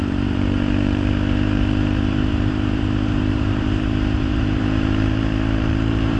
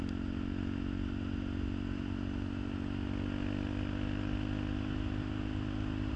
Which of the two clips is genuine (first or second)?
second